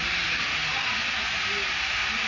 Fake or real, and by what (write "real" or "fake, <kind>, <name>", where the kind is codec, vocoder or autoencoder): real